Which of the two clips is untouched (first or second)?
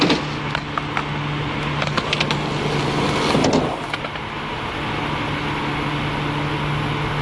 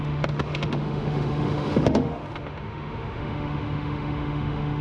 first